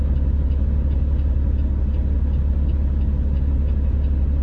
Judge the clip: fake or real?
real